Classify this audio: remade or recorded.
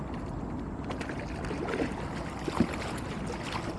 recorded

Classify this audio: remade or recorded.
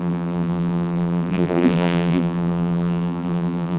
remade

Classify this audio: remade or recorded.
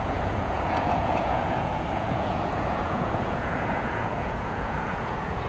remade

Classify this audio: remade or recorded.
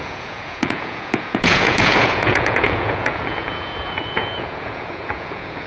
remade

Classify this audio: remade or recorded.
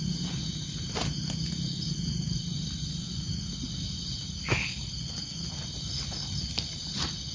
recorded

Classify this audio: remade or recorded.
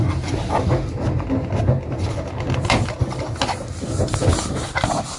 recorded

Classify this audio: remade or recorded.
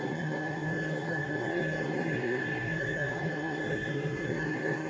remade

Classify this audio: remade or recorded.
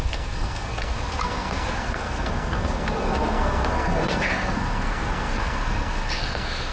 remade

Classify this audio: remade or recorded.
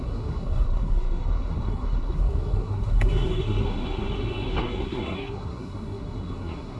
remade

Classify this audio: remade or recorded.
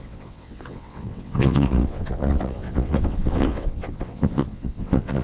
remade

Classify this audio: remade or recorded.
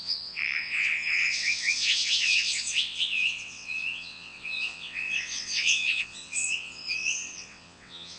remade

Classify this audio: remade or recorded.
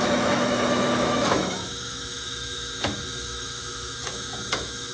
remade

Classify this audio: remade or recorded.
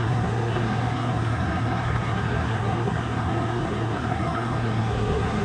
remade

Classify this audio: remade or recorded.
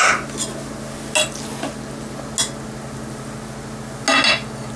recorded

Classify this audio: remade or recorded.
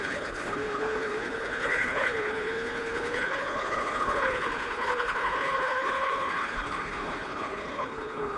remade